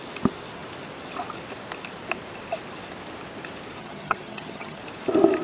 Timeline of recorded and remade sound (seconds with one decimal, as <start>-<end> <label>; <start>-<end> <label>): 0.0-3.8 recorded; 3.8-4.8 remade; 4.8-5.4 recorded